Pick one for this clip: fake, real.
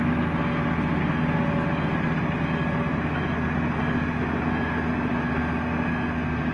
real